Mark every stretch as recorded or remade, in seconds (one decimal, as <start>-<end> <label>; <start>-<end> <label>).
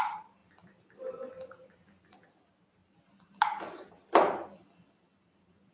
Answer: 0.0-5.7 recorded